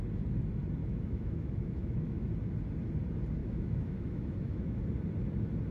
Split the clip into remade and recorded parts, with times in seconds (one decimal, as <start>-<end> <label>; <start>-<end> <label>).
0.0-0.8 recorded; 0.8-2.3 remade; 2.3-3.4 recorded; 3.4-4.8 remade; 4.8-5.7 recorded